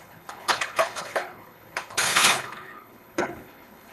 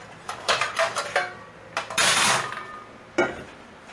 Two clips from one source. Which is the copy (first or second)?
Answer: first